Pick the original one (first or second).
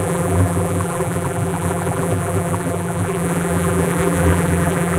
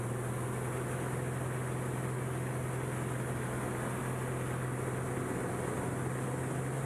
second